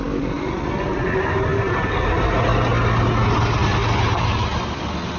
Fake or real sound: real